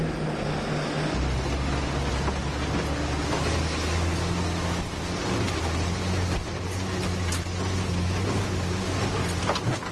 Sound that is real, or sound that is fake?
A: real